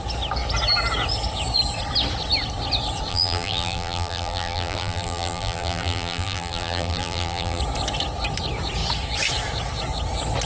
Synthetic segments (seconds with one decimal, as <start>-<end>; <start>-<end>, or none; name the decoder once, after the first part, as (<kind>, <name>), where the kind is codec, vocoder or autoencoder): 3.1-7.6 (vocoder, BigVGAN v2)